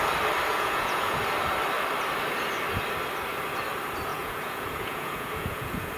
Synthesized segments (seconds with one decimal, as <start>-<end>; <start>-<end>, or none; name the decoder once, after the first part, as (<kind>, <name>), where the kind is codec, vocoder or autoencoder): 0.5-1.2 (vocoder, Vocos); 4.1-6.0

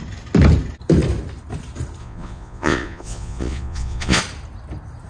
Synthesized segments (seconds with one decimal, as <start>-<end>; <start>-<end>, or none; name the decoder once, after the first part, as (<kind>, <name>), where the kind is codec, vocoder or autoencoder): 2.0-4.2 (vocoder, Vocos)

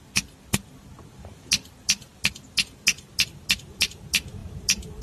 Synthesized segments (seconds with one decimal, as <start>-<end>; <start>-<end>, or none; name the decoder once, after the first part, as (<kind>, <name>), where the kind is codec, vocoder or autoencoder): none

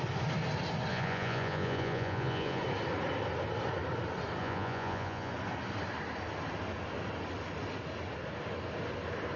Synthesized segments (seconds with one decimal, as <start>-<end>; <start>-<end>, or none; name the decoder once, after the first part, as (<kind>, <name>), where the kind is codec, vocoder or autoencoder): 0.9-2.6 (vocoder, Vocos); 4.4-5.3

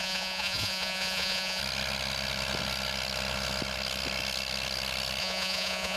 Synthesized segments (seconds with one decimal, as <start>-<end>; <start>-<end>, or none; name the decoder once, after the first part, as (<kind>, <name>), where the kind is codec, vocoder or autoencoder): 0.0-1.6 (vocoder, Vocos); 5.2-6.0

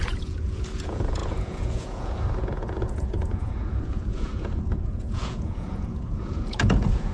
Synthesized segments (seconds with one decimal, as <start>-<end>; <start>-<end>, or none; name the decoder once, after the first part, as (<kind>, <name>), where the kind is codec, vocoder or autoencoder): 0.0-7.1 (vocoder, Vocos)

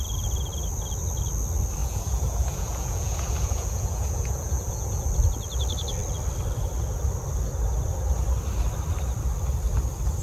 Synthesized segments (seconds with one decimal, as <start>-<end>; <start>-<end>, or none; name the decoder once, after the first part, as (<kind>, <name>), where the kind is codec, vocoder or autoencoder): 1.8-5.1 (vocoder, Vocos)